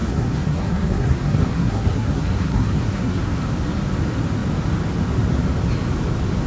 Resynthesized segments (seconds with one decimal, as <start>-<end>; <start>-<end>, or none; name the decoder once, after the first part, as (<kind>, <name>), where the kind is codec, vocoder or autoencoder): 0.0-3.2 (codec, SNAC)